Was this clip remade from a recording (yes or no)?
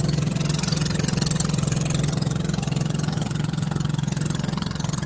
yes